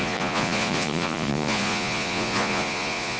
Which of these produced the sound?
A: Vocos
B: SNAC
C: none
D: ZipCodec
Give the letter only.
A